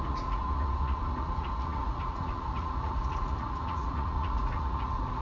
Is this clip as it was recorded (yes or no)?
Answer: no